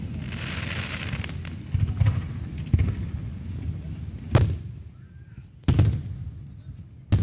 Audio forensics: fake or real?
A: real